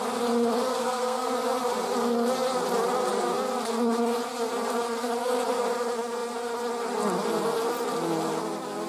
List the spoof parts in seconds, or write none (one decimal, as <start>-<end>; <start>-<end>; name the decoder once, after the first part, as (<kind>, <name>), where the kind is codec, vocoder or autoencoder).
0.7-1.3 (codec, SNAC)